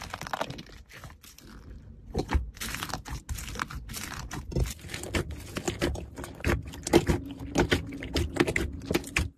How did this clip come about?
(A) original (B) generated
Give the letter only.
A